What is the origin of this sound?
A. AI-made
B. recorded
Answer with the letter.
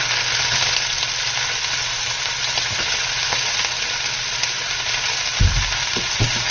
B